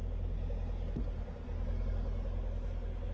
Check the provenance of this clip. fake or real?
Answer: real